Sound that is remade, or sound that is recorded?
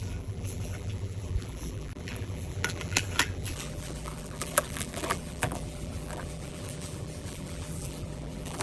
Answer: remade